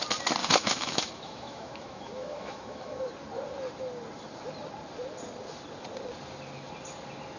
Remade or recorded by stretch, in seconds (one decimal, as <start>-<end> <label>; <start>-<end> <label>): 0.0-0.4 recorded; 0.4-3.1 remade; 3.1-7.4 recorded